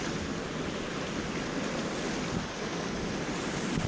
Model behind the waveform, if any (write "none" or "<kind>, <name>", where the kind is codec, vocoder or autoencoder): none